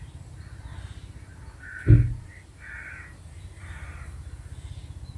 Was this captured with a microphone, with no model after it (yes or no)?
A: yes